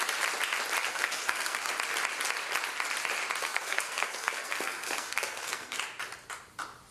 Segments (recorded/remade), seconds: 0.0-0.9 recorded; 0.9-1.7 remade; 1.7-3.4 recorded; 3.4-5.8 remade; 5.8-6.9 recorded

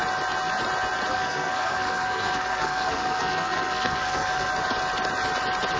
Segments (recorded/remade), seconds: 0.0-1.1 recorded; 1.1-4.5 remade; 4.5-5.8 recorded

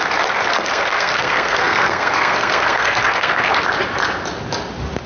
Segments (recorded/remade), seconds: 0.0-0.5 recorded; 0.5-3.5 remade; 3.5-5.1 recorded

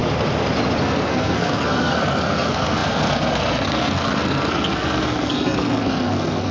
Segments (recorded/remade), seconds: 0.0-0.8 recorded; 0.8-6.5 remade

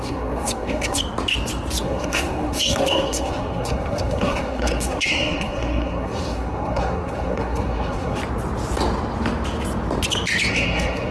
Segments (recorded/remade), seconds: 0.0-1.0 remade; 1.0-1.8 recorded; 1.8-8.2 remade; 8.2-10.5 recorded; 10.5-11.1 remade